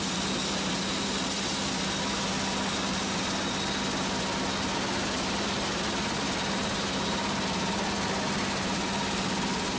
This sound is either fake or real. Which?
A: real